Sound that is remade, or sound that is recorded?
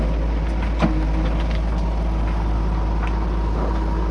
recorded